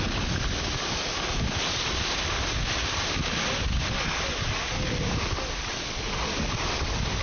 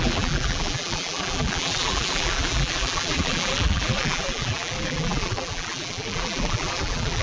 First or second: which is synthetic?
second